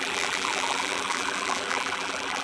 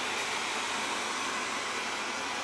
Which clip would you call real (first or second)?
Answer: second